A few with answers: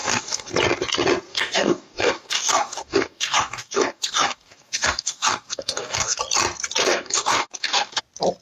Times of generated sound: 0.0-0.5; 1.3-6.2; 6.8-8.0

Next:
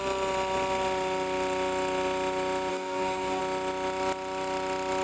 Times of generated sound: 2.7-3.4

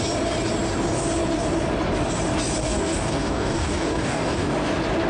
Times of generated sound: 2.6-4.5

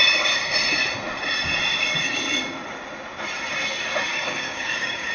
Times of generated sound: 4.1-5.1

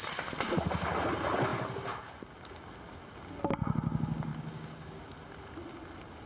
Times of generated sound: 4.3-5.0

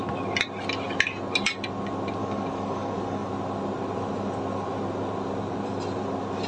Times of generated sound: 2.2-3.3

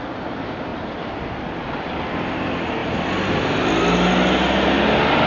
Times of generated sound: none